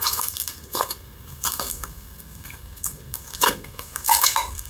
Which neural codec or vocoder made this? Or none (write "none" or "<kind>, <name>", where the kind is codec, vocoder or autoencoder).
codec, SNAC